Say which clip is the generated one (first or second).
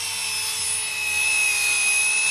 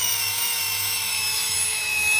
second